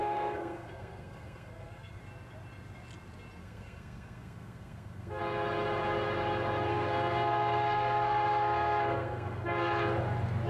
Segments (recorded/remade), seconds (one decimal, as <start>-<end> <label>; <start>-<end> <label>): 0.0-2.0 remade; 2.0-3.4 recorded; 3.4-5.2 remade; 5.2-6.7 recorded; 6.7-9.7 remade; 9.7-10.5 recorded